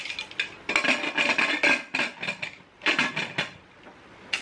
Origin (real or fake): real